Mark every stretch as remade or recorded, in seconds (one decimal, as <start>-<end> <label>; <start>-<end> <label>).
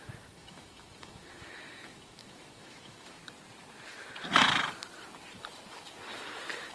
0.0-3.2 remade; 3.2-6.7 recorded